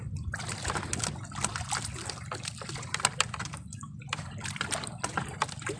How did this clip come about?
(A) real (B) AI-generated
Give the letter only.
A